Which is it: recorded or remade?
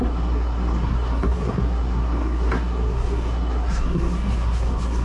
remade